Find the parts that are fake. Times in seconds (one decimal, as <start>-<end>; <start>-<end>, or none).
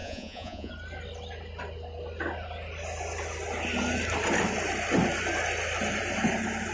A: 0.0-0.7